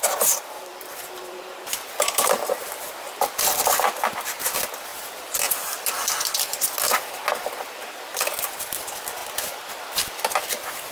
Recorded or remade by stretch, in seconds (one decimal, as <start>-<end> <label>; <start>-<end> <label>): 0.0-4.9 remade; 4.9-7.4 recorded; 7.4-9.2 remade; 9.2-10.9 recorded